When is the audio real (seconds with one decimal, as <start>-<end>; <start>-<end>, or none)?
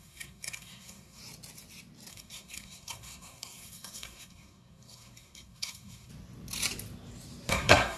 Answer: 1.2-2.1; 6.1-7.5